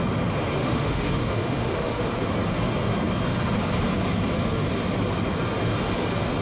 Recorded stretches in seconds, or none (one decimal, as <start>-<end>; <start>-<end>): 0.0-0.6; 2.0-6.4